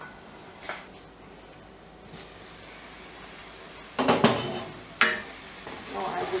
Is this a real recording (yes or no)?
yes